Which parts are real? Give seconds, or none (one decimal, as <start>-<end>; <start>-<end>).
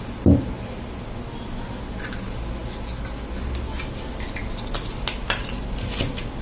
0.0-6.4